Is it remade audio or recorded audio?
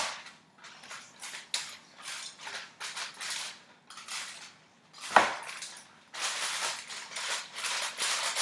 recorded